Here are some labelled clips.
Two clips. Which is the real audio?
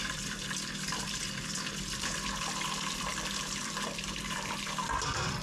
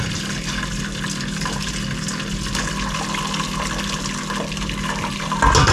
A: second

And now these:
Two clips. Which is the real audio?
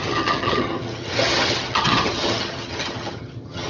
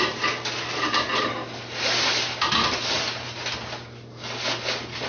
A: second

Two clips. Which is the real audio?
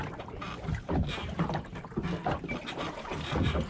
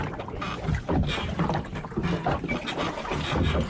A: second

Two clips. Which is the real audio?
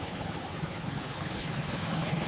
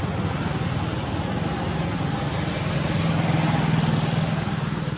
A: second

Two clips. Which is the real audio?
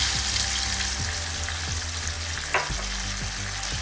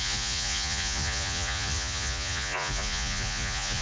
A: first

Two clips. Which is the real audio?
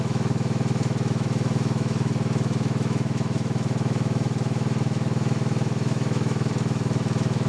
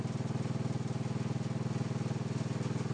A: second